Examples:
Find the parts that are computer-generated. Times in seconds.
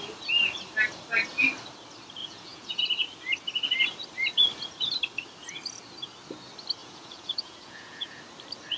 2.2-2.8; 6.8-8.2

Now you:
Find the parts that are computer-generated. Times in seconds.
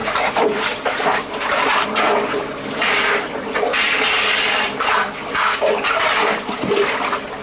2.6-7.4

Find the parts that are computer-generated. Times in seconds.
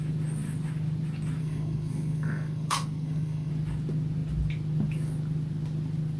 1.4-3.5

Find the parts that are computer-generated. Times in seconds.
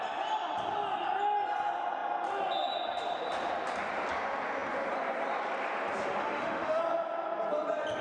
6.2-6.8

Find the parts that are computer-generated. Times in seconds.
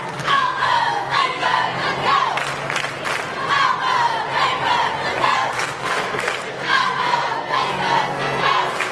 0.0-1.8; 5.2-8.9